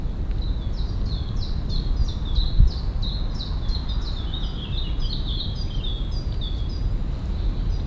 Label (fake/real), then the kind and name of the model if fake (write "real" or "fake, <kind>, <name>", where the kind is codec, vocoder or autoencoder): real